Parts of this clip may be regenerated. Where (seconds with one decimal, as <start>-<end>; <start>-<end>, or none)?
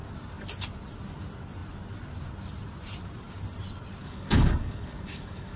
4.0-5.6